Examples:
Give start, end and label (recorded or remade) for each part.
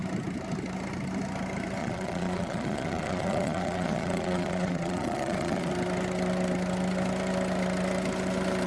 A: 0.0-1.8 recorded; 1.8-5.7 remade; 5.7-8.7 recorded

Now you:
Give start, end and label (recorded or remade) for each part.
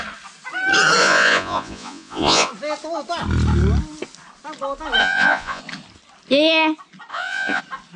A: 0.0-1.0 recorded; 1.0-2.5 remade; 2.5-5.0 recorded; 5.0-5.6 remade; 5.6-7.1 recorded; 7.1-7.6 remade; 7.6-8.0 recorded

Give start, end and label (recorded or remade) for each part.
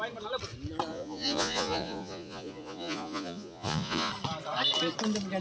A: 0.0-0.9 recorded; 0.9-4.1 remade; 4.1-5.4 recorded